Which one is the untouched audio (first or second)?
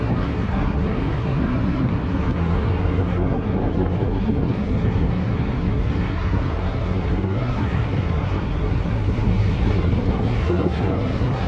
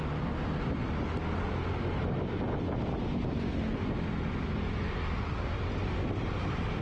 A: second